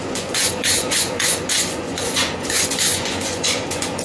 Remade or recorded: remade